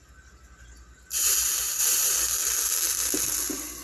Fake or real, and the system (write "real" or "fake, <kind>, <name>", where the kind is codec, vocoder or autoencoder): real